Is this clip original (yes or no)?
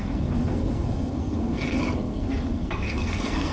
no